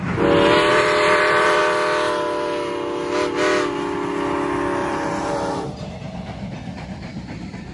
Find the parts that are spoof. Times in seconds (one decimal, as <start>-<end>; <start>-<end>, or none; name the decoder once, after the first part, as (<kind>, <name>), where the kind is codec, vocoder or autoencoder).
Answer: 0.7-1.6 (vocoder, BigVGAN v2); 4.8-5.9